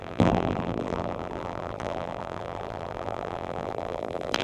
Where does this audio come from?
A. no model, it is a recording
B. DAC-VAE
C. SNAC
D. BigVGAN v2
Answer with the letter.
D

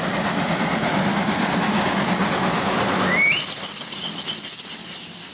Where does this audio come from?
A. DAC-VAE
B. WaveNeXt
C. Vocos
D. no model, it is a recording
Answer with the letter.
D